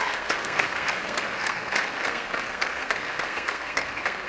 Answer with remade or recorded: remade